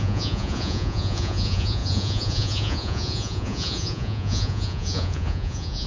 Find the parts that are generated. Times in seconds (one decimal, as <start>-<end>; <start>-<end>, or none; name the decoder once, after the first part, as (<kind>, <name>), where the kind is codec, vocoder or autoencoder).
0.0-5.9 (vocoder, Vocos)